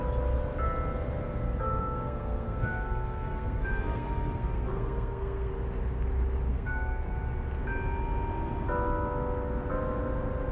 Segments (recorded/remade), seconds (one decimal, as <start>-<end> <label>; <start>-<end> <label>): 0.0-1.8 recorded; 1.8-5.5 remade; 5.5-6.5 recorded; 6.5-7.1 remade; 7.1-10.5 recorded